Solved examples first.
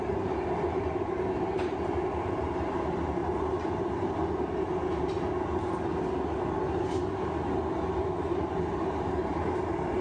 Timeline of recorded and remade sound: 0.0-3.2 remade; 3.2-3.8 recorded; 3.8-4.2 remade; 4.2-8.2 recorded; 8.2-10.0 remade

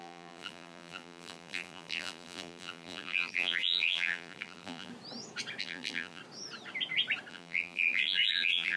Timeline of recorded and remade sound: 0.0-4.9 remade; 4.9-5.6 recorded; 5.6-6.2 remade; 6.2-7.3 recorded; 7.3-8.8 remade

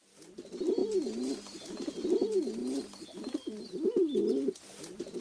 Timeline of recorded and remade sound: 0.0-5.2 recorded

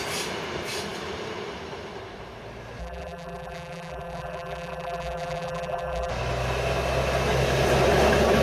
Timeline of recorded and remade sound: 0.0-2.8 recorded; 2.8-6.1 remade; 6.1-8.4 recorded